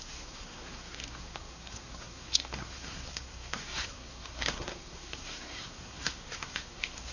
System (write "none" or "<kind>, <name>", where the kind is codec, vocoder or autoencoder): codec, SNAC